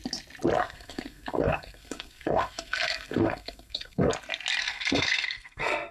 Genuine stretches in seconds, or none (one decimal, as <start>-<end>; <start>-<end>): 0.0-0.6; 4.1-4.6

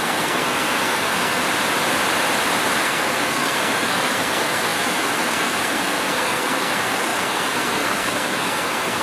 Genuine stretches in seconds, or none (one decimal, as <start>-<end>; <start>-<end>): 1.4-2.8

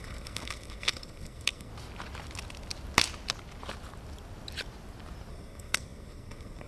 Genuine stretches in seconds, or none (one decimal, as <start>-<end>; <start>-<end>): 1.7-5.3

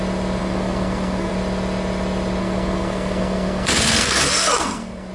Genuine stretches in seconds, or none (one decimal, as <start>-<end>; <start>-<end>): 0.0-0.4; 1.3-2.4